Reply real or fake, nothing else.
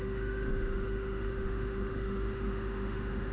fake